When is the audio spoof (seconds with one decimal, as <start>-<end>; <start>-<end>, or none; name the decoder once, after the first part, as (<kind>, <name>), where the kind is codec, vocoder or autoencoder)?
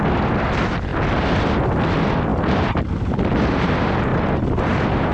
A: 2.3-2.8 (vocoder, BigVGAN v2); 4.1-5.1